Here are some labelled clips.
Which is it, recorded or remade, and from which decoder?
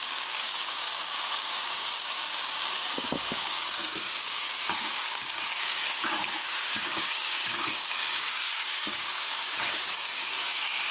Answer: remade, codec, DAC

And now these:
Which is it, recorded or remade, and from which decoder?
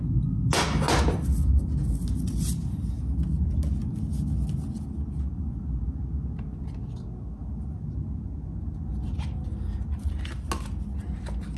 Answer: recorded